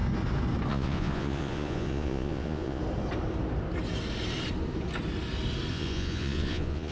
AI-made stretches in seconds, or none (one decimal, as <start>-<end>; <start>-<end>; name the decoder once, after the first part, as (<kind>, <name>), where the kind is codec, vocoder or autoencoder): 0.7-2.8 (vocoder, Vocos); 5.7-6.9